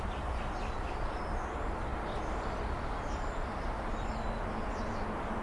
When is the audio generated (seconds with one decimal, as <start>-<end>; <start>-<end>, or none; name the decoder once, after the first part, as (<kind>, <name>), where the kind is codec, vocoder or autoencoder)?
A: none